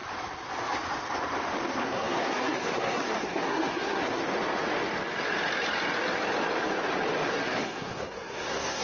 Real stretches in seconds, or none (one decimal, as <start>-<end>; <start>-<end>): 0.0-1.8; 4.2-7.3

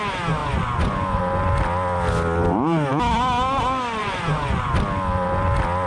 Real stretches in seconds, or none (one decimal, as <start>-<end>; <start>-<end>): 0.0-0.4; 1.2-4.0; 4.7-5.9